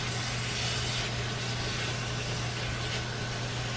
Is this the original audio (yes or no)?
yes